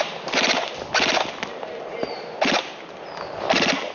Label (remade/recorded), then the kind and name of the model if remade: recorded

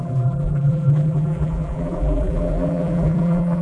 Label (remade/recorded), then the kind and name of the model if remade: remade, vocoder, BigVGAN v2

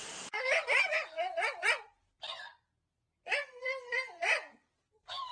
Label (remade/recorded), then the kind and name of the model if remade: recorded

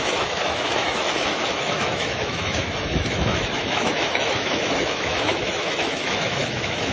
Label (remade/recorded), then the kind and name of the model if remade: remade, autoencoder, DAC-VAE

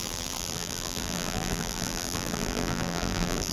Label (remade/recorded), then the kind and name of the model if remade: remade, vocoder, BigVGAN v2